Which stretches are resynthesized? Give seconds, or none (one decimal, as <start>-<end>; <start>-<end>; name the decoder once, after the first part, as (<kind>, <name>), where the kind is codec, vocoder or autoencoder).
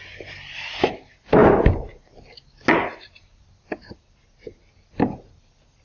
none